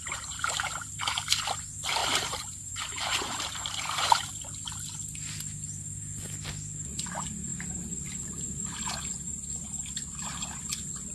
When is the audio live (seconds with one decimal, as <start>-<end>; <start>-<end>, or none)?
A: 0.5-2.0; 4.3-11.1